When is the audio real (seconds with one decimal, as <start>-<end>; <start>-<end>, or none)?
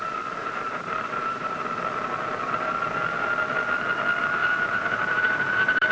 0.0-0.4; 1.5-4.4